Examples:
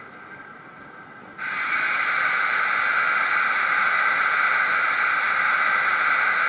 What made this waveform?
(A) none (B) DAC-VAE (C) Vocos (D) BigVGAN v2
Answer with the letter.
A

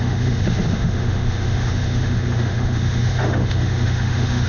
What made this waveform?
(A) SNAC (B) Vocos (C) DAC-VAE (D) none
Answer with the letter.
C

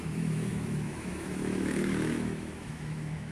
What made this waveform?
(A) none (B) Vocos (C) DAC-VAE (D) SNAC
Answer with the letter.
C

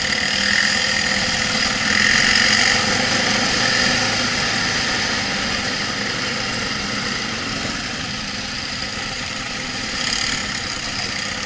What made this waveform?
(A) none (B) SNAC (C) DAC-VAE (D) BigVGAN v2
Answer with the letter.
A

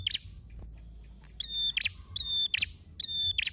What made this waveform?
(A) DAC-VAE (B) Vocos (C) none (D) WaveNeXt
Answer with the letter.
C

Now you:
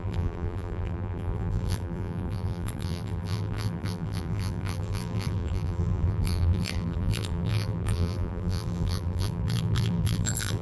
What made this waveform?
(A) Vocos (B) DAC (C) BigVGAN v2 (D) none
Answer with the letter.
C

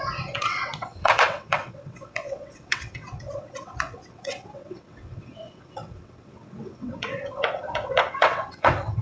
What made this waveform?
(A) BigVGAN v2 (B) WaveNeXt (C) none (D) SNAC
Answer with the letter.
B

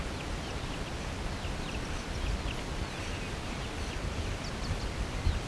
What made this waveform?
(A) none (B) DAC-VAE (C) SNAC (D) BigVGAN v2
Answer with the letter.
A